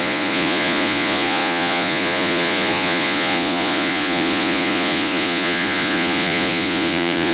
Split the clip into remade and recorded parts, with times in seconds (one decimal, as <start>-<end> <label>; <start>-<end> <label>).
0.0-7.3 remade